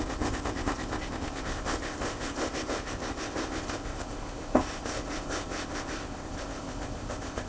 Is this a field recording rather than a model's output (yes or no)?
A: no